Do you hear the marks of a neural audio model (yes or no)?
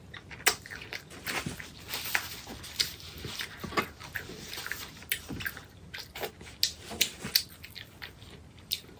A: no